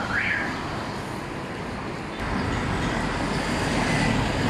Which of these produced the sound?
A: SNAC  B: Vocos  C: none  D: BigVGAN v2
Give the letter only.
C